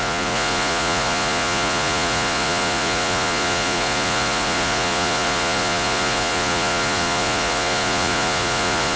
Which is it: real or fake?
fake